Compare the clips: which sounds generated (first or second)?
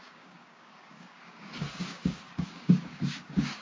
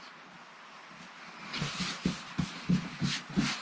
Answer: first